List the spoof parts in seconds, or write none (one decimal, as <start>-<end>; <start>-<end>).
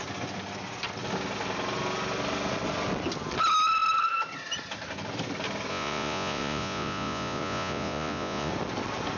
5.7-8.5